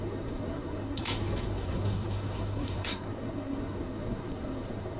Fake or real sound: fake